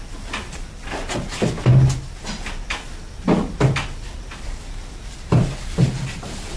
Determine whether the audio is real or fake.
real